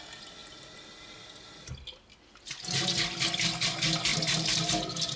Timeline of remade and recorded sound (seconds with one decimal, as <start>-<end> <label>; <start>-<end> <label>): 0.0-5.2 recorded